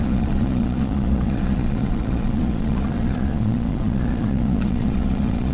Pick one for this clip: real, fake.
fake